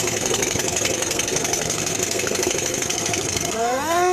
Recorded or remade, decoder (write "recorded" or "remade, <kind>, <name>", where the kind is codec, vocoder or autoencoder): remade, codec, SNAC